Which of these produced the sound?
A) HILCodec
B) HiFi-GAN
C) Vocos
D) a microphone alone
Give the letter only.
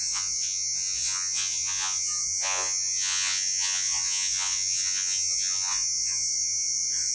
C